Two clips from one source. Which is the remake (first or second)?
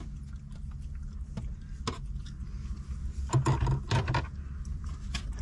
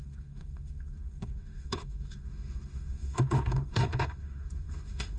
second